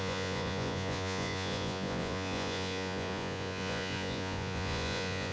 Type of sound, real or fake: fake